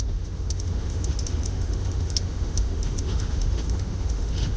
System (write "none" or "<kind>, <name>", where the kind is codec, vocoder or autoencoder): autoencoder, DAC-VAE